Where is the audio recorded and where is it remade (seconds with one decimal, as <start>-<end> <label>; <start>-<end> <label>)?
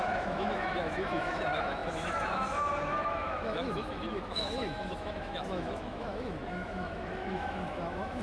0.0-8.2 remade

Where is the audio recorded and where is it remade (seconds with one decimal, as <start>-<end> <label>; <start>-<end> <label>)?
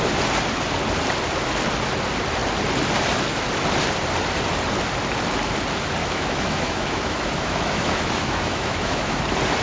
0.0-6.0 recorded; 6.0-9.2 remade; 9.2-9.6 recorded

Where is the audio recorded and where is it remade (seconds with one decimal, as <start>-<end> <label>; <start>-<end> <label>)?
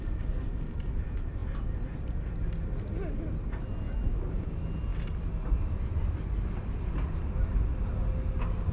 0.0-8.7 recorded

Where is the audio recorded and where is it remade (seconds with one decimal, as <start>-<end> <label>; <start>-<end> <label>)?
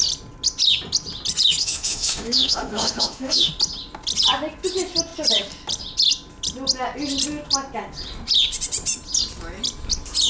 0.0-1.6 recorded; 1.6-3.5 remade; 3.5-10.3 recorded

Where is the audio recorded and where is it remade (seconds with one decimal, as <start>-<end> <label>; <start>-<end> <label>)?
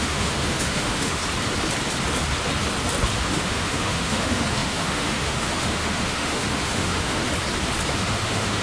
0.0-1.2 remade; 1.2-3.2 recorded; 3.2-7.2 remade; 7.2-7.9 recorded; 7.9-8.6 remade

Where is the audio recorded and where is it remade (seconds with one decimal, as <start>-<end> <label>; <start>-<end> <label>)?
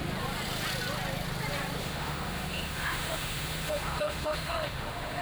0.0-1.8 recorded; 1.8-5.2 remade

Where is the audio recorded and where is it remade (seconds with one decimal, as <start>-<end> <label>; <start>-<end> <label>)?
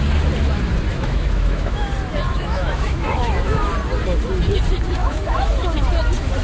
0.0-0.9 recorded; 0.9-1.9 remade; 1.9-2.3 recorded; 2.3-3.7 remade; 3.7-5.0 recorded; 5.0-5.5 remade; 5.5-6.4 recorded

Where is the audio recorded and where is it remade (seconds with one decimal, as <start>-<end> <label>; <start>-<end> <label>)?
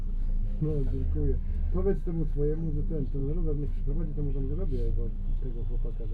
0.0-3.2 recorded; 3.2-3.9 remade; 3.9-6.1 recorded